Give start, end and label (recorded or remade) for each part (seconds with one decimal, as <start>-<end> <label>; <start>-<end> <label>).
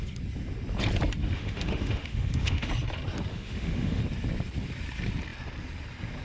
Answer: 0.0-1.2 recorded; 1.2-2.7 remade; 2.7-3.3 recorded; 3.3-4.0 remade; 4.0-6.2 recorded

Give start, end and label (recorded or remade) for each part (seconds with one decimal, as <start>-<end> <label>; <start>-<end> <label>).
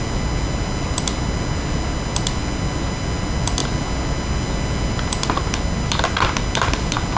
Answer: 0.0-7.2 recorded